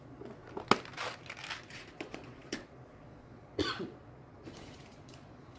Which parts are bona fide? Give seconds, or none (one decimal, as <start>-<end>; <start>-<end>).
0.4-1.6